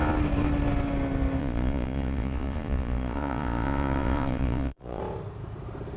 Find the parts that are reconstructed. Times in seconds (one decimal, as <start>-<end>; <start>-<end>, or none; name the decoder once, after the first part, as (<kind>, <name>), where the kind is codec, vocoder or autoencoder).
1.4-5.0 (vocoder, Vocos)